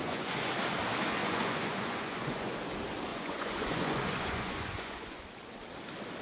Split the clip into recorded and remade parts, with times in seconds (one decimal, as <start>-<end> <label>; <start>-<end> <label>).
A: 0.0-0.5 remade; 0.5-1.2 recorded; 1.2-2.5 remade; 2.5-3.1 recorded; 3.1-5.2 remade; 5.2-6.2 recorded